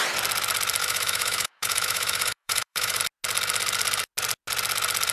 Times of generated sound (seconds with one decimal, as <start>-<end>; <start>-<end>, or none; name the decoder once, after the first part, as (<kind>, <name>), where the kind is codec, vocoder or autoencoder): 0.8-3.0 (autoencoder, DAC-VAE)